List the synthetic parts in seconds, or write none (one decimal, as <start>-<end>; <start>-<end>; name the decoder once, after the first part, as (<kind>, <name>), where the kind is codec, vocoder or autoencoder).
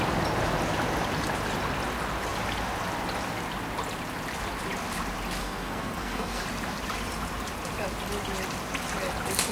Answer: 5.4-6.4 (codec, SNAC)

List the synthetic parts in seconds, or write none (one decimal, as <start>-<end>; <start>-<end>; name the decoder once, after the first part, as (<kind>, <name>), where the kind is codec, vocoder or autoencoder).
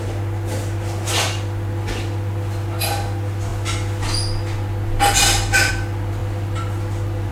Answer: none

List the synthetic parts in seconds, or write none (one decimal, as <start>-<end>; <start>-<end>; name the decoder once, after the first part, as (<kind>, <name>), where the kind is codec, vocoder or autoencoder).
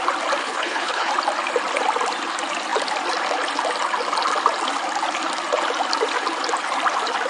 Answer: 0.4-1.1 (codec, HILCodec)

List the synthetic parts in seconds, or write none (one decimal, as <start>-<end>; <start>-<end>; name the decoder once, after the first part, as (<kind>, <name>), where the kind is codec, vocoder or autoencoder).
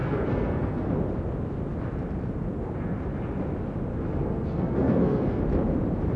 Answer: 0.0-0.9 (codec, SNAC); 3.9-5.4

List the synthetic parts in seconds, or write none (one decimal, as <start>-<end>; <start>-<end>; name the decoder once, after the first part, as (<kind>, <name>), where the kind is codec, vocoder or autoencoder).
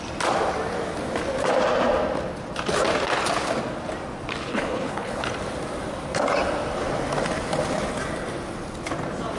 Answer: 4.5-5.2 (codec, HILCodec)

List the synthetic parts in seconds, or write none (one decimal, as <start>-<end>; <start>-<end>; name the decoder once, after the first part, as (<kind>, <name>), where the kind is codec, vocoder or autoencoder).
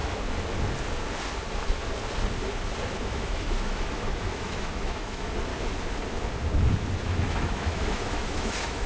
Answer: 3.0-5.5 (autoencoder, DAC-VAE); 7.0-8.9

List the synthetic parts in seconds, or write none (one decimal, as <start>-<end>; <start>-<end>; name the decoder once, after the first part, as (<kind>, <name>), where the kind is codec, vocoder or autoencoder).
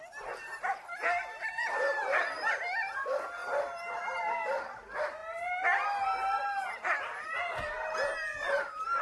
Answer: none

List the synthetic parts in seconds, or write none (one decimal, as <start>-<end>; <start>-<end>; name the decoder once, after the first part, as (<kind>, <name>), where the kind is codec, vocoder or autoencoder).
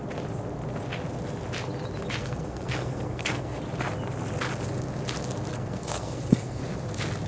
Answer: 2.2-3.6 (codec, SNAC); 5.5-6.6